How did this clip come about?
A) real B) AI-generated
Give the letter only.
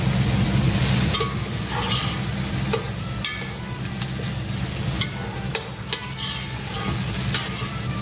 A